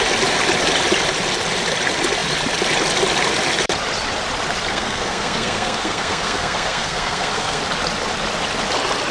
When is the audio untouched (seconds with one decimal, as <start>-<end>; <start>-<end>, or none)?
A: 0.0-4.7; 7.6-9.1